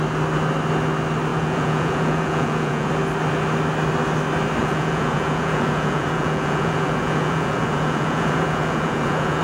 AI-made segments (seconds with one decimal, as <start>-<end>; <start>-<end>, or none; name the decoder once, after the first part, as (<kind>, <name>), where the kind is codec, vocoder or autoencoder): 1.3-2.9 (vocoder, Vocos); 4.6-9.4